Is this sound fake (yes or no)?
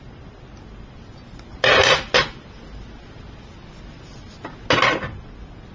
no